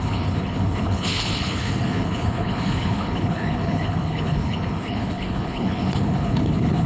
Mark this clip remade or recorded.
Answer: remade